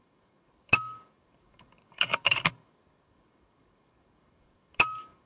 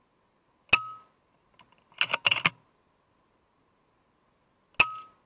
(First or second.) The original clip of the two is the second